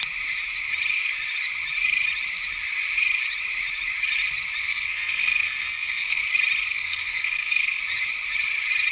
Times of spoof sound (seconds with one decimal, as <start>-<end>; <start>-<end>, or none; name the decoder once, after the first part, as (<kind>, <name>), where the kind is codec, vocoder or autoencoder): 4.6-6.2 (codec, SNAC); 6.7-7.8